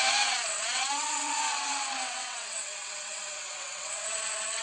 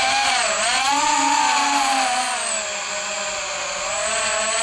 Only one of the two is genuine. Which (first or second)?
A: second